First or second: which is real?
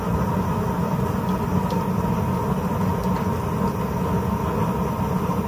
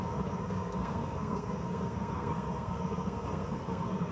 first